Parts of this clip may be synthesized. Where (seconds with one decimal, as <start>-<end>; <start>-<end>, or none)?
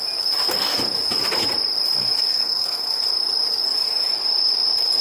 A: 2.3-3.0